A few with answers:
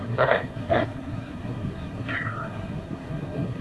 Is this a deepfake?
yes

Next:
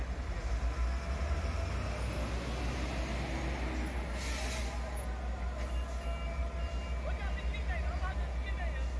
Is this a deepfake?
no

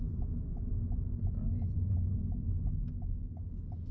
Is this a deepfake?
no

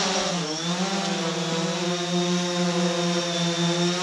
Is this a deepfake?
no